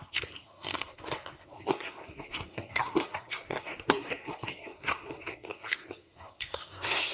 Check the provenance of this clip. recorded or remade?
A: remade